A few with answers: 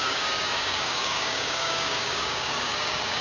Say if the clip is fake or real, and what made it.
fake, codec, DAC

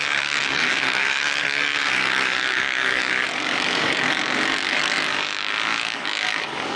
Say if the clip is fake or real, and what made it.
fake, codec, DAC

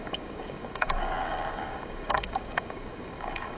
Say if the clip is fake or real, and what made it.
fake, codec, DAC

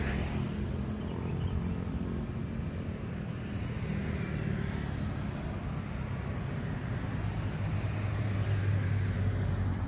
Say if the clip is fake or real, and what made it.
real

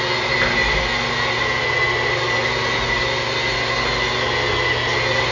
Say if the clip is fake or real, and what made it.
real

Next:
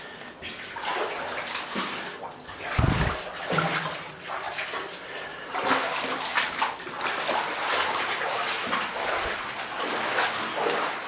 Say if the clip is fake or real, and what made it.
real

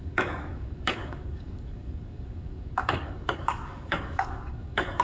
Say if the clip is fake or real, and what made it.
fake, codec, DAC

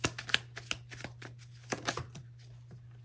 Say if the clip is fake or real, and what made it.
real